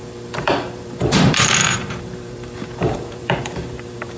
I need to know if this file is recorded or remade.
remade